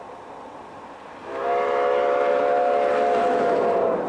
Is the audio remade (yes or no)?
no